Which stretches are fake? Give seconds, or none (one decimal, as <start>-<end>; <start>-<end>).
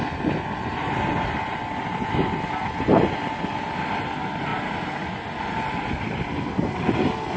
none